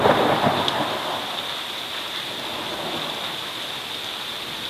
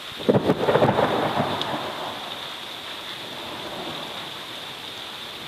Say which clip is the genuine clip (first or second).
first